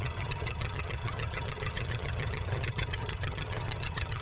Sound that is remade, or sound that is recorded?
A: remade